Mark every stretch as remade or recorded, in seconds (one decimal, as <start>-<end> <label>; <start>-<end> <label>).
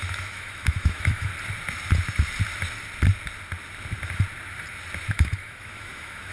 0.0-1.3 remade; 1.3-5.1 recorded; 5.1-6.3 remade